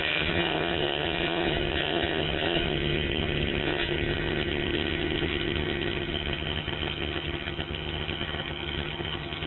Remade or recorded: remade